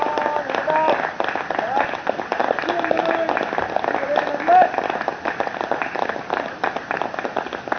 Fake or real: real